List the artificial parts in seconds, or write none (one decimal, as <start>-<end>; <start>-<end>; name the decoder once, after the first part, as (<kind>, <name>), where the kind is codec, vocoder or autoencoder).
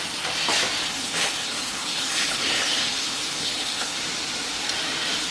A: 0.8-4.0 (codec, HILCodec)